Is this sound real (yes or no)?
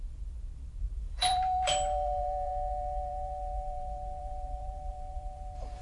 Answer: no